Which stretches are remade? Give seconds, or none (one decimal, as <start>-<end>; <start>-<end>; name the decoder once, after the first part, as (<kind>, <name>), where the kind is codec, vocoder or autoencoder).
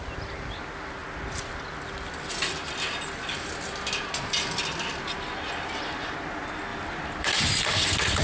6.7-7.4 (vocoder, BigVGAN v2)